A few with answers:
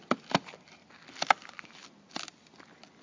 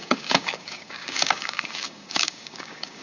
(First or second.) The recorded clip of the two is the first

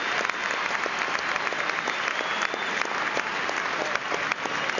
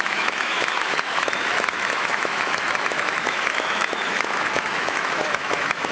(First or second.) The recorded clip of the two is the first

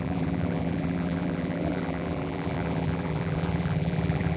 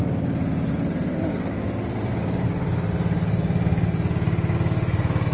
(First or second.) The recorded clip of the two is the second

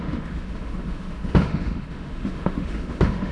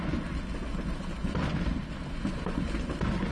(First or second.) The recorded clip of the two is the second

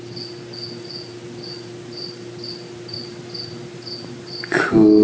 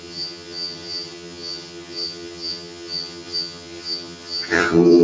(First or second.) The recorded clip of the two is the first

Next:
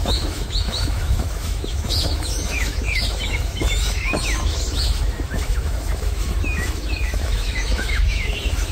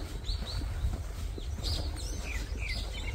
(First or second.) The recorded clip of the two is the second